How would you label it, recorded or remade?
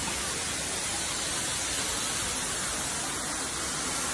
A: recorded